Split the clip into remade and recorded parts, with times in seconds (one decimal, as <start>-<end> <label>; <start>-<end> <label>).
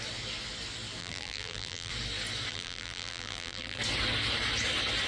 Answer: 0.0-1.0 recorded; 1.0-1.9 remade; 1.9-2.5 recorded; 2.5-3.8 remade; 3.8-5.1 recorded